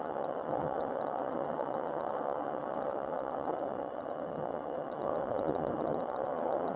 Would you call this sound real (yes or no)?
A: no